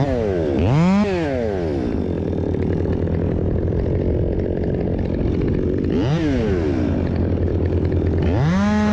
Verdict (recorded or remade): recorded